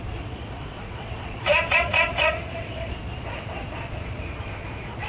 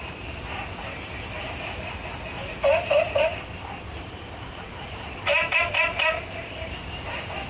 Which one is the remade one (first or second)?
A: first